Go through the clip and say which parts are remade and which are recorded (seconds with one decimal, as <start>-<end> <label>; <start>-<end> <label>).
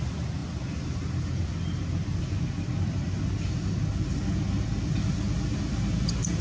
0.0-6.4 recorded